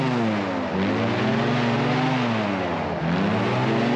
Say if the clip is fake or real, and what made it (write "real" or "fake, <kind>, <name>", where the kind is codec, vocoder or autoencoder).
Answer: real